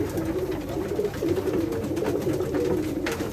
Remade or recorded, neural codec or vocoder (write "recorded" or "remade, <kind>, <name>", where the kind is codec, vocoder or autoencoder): recorded